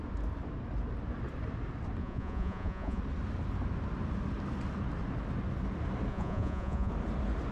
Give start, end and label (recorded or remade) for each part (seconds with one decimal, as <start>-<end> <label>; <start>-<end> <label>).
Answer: 0.0-2.0 recorded; 2.0-3.0 remade; 3.0-6.1 recorded; 6.1-6.9 remade; 6.9-7.5 recorded